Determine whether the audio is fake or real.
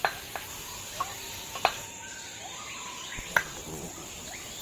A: real